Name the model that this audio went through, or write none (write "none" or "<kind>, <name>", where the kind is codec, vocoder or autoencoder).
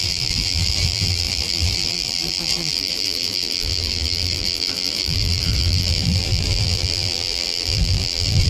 vocoder, BigVGAN v2